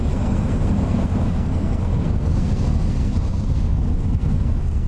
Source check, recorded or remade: remade